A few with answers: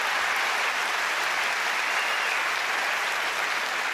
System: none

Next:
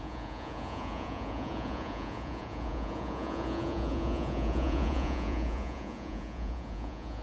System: vocoder, Vocos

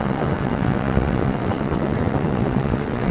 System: vocoder, WaveNeXt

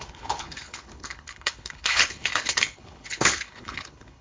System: codec, HILCodec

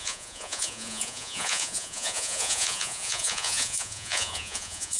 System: vocoder, Vocos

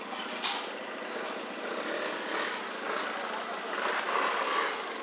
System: none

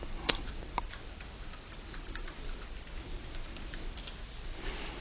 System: none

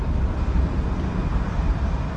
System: vocoder, BigVGAN v2